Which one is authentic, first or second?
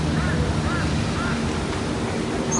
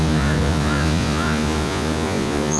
first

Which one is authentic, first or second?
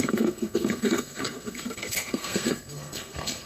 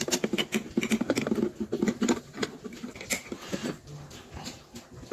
second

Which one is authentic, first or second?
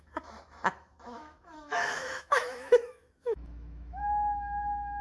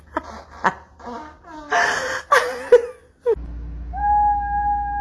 second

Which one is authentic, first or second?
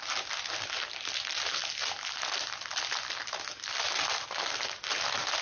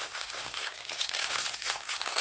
first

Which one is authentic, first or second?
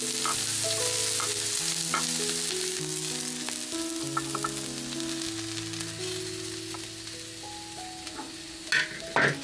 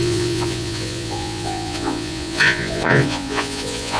first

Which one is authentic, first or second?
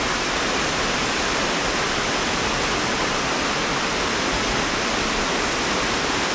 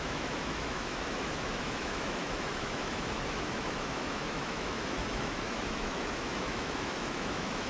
first